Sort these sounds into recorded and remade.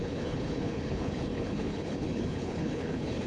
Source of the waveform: remade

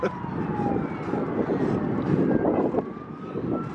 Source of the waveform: recorded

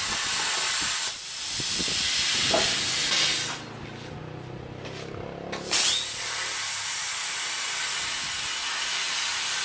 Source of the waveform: recorded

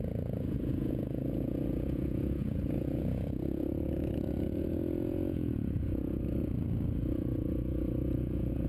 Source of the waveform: remade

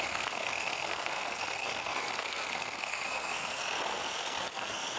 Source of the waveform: remade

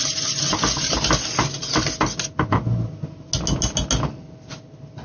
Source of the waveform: recorded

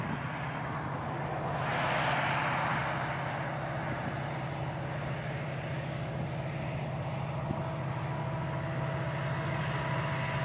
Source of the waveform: recorded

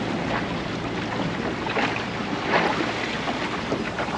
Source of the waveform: recorded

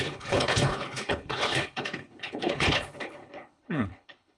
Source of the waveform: remade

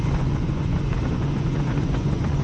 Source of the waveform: remade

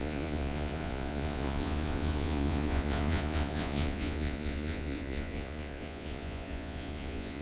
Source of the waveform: remade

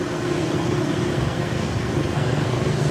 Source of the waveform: remade